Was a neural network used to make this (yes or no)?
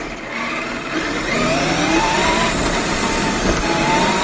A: no